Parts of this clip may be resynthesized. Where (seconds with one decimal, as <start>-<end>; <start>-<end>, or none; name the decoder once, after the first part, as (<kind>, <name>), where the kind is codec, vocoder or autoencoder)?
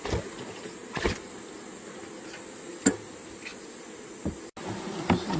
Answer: none